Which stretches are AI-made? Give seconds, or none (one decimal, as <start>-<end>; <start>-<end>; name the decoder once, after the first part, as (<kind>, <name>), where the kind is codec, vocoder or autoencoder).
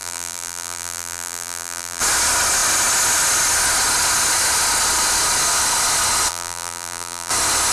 0.0-2.0 (vocoder, BigVGAN v2); 6.3-7.3